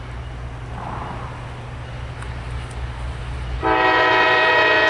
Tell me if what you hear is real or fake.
real